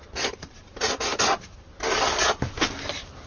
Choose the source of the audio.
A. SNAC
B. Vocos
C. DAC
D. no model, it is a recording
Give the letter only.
D